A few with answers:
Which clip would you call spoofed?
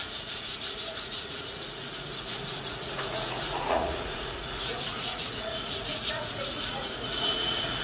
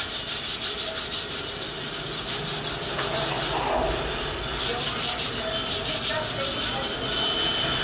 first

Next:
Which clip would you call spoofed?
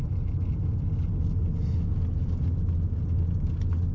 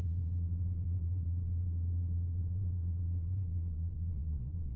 second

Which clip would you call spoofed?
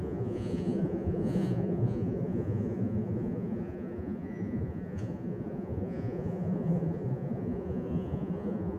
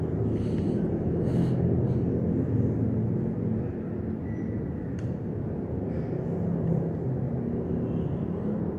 first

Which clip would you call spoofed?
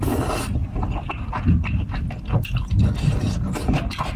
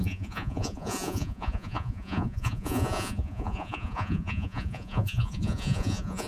second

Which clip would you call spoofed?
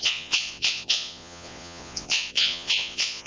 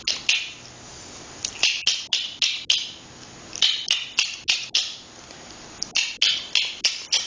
first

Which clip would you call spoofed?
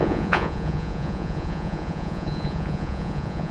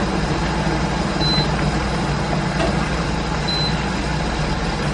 first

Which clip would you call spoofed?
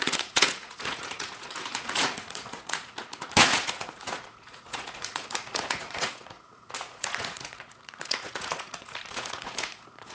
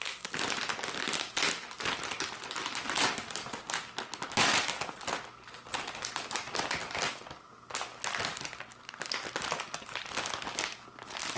first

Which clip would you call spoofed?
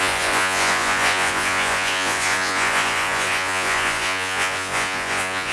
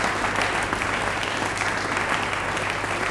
first